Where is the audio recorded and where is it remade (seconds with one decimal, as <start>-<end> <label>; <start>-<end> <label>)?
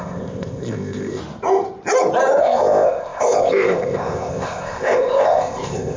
0.0-1.2 remade; 1.2-2.4 recorded; 2.4-6.0 remade